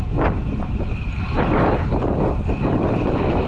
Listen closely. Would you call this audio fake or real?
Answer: real